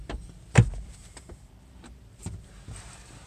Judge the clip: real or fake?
real